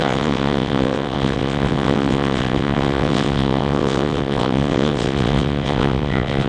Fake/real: fake